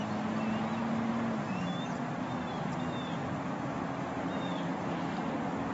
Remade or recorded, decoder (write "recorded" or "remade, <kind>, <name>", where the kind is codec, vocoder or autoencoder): recorded